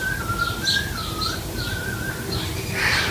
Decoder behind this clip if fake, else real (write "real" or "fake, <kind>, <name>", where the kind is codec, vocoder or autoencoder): real